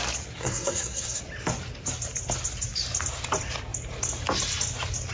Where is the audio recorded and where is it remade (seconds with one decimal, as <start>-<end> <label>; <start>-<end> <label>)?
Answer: 0.0-0.4 recorded; 0.4-1.2 remade; 1.2-5.1 recorded